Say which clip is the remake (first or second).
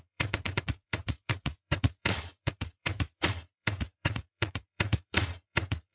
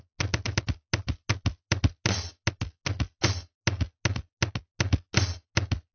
first